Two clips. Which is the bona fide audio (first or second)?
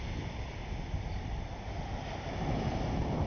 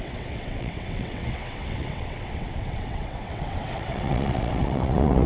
first